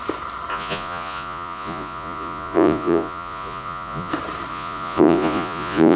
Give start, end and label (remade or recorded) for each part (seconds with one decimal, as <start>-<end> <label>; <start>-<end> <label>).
0.0-0.5 recorded; 0.5-4.1 remade; 4.1-4.5 recorded; 4.5-6.0 remade